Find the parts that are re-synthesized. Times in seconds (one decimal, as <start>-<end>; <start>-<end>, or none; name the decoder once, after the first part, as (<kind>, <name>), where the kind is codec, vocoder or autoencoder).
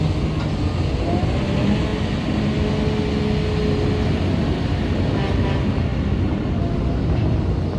none